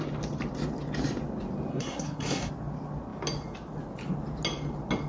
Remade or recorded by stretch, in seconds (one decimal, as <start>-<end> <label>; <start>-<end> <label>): 0.0-1.7 recorded; 1.7-2.5 remade; 2.5-5.1 recorded